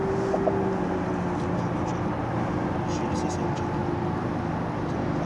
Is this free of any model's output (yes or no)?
yes